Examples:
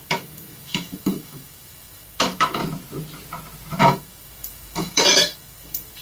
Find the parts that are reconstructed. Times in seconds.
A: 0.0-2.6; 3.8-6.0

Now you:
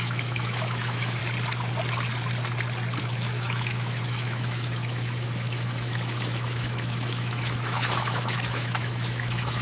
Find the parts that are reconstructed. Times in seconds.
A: 0.0-1.2; 3.0-9.6

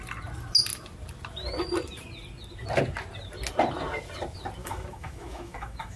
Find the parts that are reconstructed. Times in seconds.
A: 4.6-6.0

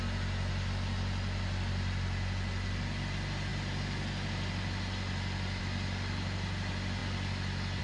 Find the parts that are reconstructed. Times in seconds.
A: none